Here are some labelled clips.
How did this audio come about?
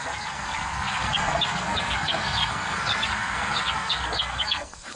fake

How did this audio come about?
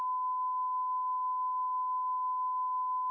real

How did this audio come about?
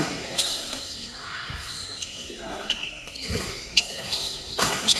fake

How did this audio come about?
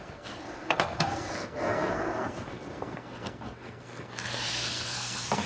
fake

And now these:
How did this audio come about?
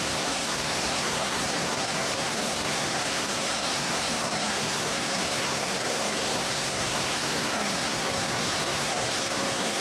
fake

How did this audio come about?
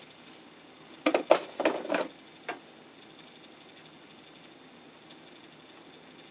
real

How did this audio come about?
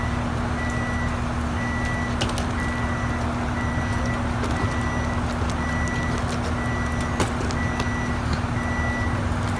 real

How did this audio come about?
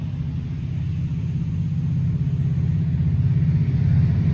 real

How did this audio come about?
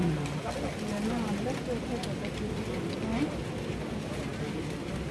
real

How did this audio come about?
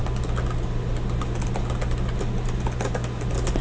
real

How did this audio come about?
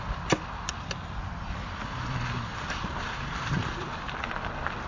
real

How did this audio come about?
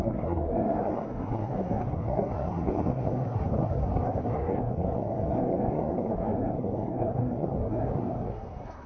fake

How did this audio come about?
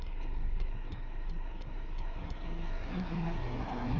fake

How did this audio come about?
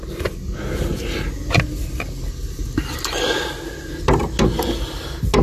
real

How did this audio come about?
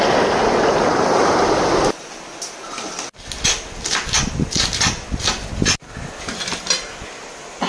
real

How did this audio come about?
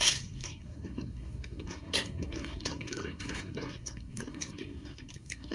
fake